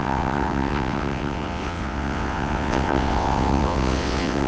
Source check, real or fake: fake